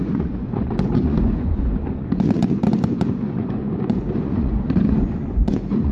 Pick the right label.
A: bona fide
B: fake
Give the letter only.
B